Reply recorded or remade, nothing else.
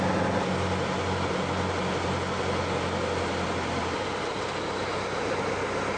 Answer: recorded